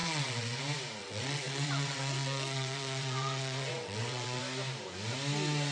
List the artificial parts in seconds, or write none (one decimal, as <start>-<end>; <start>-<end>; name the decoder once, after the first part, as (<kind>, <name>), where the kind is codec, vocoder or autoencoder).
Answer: 0.0-0.6 (vocoder, WaveNeXt); 1.0-4.4